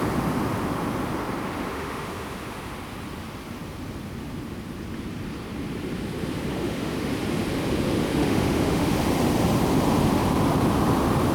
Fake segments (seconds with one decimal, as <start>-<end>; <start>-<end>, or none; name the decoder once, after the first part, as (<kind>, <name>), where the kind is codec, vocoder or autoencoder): 1.7-2.7 (autoencoder, DAC-VAE); 6.5-7.1; 8.0-8.9